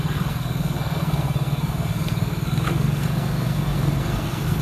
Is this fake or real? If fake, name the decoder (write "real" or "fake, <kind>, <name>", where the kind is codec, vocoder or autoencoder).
fake, codec, SNAC